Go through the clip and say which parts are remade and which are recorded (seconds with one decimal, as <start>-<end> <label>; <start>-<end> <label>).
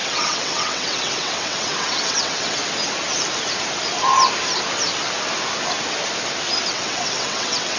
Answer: 0.0-2.6 remade; 2.6-6.7 recorded; 6.7-7.8 remade